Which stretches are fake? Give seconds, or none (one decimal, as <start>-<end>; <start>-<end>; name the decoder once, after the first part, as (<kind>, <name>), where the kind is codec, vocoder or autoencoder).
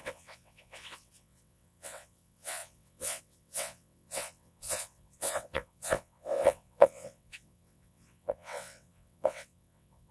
0.0-10.1 (vocoder, WaveNeXt)